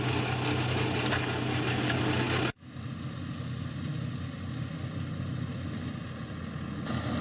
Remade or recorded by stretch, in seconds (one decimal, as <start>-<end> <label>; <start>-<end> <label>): 0.0-7.2 recorded